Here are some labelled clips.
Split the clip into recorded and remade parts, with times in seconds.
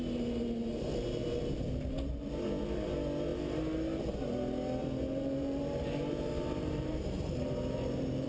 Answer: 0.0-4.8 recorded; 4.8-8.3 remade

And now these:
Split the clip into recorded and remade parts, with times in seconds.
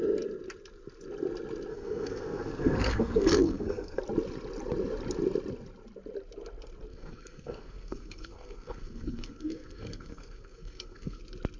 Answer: 0.0-1.7 recorded; 1.7-4.0 remade; 4.0-6.9 recorded; 6.9-11.2 remade; 11.2-11.6 recorded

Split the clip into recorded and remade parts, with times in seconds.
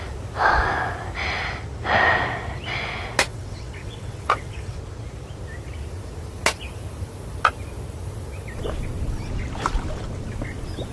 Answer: 0.0-3.3 recorded; 3.3-4.8 remade; 4.8-10.9 recorded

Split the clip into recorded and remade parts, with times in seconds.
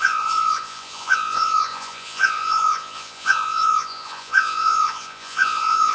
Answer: 0.0-5.9 remade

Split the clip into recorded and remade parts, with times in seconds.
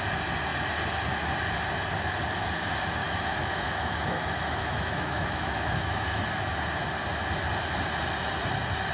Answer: 0.0-3.0 recorded; 3.0-6.2 remade; 6.2-8.9 recorded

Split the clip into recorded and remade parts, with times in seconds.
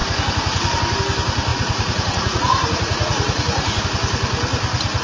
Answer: 0.0-1.5 recorded; 1.5-3.8 remade; 3.8-5.0 recorded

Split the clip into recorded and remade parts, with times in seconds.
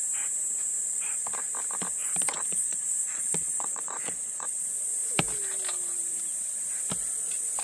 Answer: 0.0-2.0 recorded; 2.0-4.6 remade; 4.6-7.6 recorded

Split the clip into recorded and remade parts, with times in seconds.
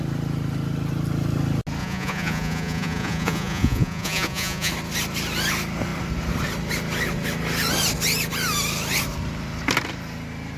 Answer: 0.0-1.8 recorded; 1.8-4.7 remade; 4.7-10.6 recorded